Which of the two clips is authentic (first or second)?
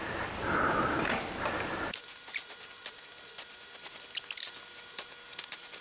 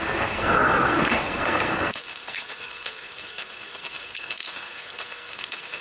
first